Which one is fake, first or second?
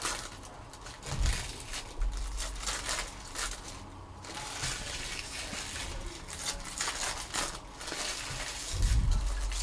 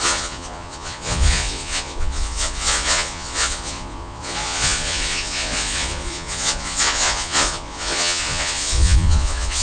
second